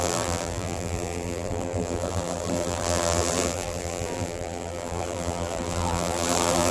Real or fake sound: fake